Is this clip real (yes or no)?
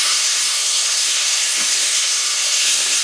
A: no